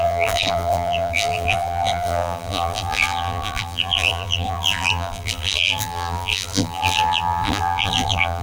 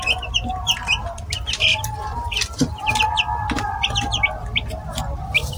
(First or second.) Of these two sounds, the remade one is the first